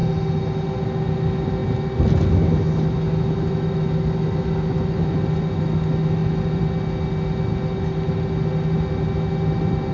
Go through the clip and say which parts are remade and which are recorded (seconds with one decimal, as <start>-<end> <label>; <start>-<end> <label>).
0.0-9.9 recorded